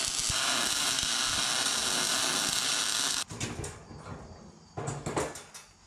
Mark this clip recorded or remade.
recorded